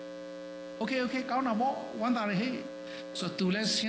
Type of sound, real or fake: real